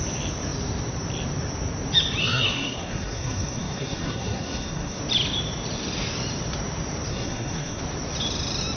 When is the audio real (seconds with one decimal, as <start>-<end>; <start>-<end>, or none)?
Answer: 0.0-2.2; 5.0-7.1; 7.8-8.8